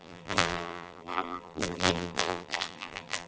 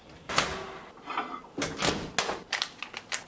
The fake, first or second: first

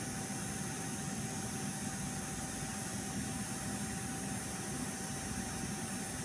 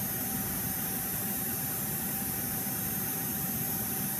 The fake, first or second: second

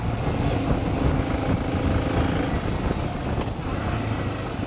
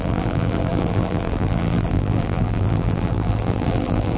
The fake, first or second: second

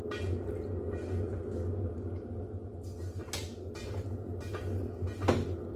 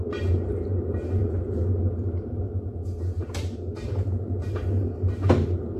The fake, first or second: second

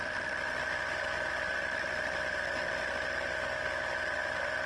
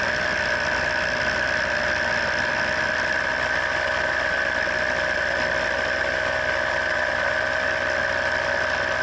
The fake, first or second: first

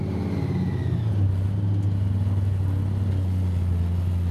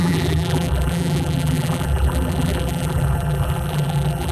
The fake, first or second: second